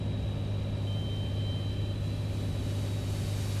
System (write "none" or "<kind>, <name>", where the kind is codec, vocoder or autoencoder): none